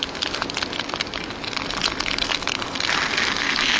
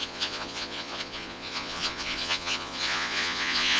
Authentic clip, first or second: first